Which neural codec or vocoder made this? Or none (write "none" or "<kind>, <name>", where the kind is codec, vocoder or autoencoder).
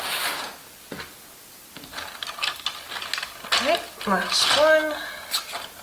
none